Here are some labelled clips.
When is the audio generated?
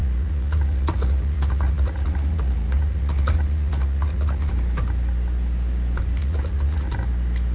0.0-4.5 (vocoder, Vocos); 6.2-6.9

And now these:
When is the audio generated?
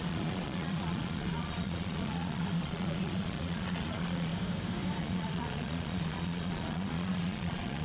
0.0-4.3 (vocoder, Vocos); 5.0-7.8